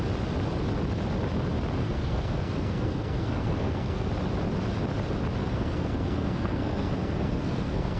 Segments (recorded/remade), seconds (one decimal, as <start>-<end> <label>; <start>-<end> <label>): 0.0-1.8 recorded; 1.8-4.1 remade; 4.1-5.4 recorded; 5.4-8.0 remade